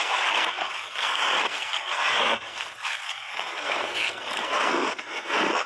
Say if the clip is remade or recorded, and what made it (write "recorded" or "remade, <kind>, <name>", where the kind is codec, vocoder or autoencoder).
remade, codec, SNAC